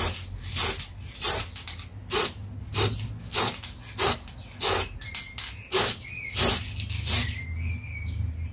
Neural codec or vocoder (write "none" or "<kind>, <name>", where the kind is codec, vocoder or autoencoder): none